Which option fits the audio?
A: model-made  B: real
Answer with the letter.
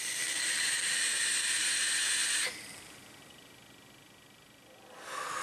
B